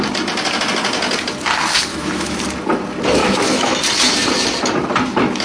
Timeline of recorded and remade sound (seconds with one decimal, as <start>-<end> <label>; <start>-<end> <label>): 0.0-1.9 recorded; 1.9-2.4 remade; 2.4-3.2 recorded; 3.2-3.8 remade; 3.8-5.4 recorded